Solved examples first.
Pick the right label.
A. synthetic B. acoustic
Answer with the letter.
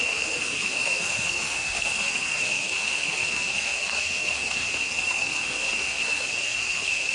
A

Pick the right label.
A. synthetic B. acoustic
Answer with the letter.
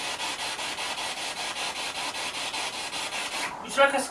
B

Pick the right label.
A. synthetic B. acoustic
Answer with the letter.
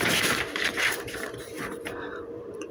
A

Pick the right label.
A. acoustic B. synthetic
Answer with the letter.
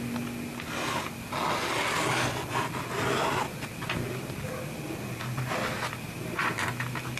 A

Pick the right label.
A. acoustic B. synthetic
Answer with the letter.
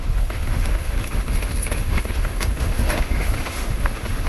B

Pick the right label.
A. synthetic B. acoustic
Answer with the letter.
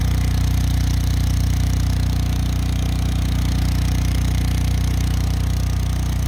A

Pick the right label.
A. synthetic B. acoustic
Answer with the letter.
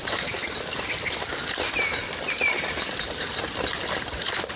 B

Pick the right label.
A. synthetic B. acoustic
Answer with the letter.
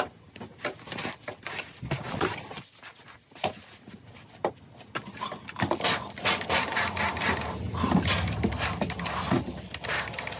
B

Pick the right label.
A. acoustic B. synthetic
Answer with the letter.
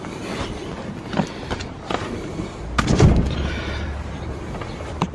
A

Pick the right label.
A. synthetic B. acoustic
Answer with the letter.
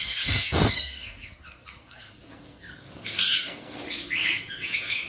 A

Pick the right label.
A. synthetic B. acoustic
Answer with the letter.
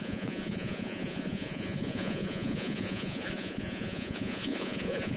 A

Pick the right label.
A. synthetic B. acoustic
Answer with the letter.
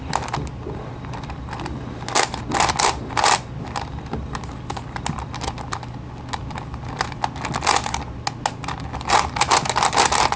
B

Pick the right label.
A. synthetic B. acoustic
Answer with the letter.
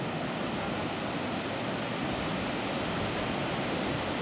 B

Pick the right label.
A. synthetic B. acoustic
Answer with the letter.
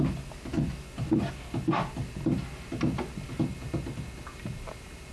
B